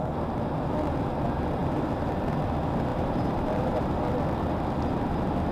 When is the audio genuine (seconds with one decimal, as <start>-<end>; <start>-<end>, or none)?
0.0-1.6; 2.2-2.9; 3.9-5.5